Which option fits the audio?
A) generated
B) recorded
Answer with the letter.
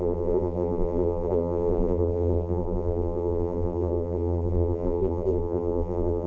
A